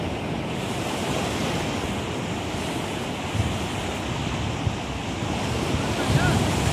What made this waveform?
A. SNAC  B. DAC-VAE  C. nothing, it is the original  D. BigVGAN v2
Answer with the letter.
C